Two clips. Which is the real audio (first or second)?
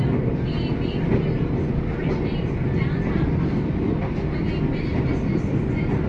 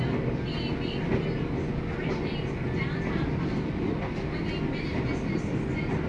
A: second